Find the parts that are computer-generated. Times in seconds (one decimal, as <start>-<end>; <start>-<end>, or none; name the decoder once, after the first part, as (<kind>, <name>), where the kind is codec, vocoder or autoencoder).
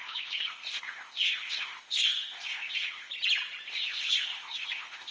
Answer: 0.0-3.1 (codec, ZipCodec); 3.7-5.1